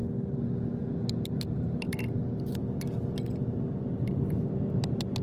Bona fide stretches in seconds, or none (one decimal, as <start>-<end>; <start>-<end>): 0.0-5.2